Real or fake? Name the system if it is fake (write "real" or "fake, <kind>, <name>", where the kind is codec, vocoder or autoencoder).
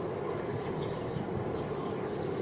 fake, codec, DAC